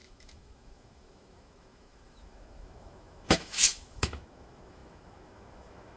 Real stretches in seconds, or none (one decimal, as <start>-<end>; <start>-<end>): none